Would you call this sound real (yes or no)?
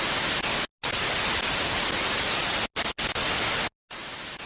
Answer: yes